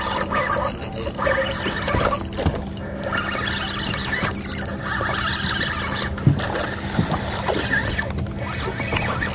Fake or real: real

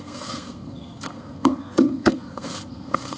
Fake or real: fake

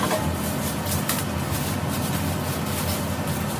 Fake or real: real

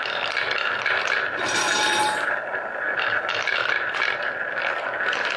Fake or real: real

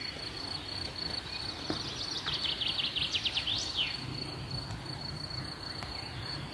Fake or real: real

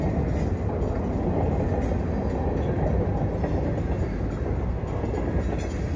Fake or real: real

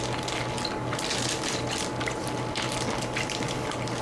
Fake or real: real